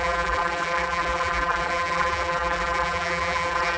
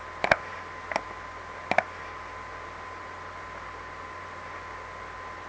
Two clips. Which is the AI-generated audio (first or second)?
first